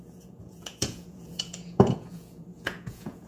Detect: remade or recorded remade